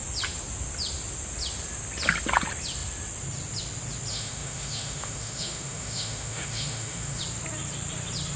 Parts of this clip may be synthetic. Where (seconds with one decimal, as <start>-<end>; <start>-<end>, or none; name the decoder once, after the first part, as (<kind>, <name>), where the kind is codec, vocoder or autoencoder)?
4.1-7.2 (autoencoder, DAC-VAE)